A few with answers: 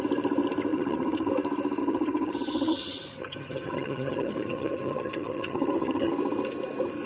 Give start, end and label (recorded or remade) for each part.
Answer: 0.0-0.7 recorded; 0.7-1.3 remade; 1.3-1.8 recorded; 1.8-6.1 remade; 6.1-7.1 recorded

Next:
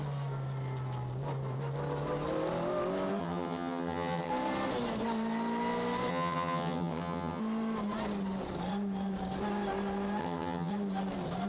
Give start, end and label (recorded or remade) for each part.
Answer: 0.0-3.2 recorded; 3.2-4.3 remade; 4.3-6.1 recorded; 6.1-7.4 remade; 7.4-10.2 recorded; 10.2-10.7 remade; 10.7-11.5 recorded

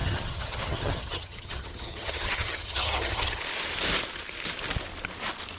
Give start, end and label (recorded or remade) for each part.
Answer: 0.0-3.4 remade; 3.4-5.6 recorded